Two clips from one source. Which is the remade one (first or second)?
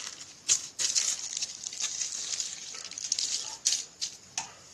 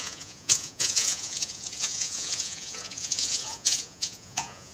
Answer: second